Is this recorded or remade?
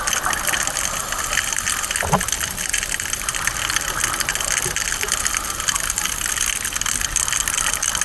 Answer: recorded